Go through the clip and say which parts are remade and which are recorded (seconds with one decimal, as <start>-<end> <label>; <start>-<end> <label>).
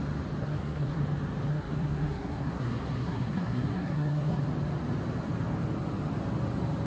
0.0-0.4 recorded; 0.4-1.0 remade; 1.0-1.5 recorded; 1.5-4.4 remade; 4.4-6.9 recorded